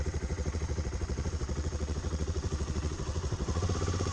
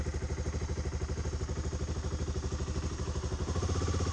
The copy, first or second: first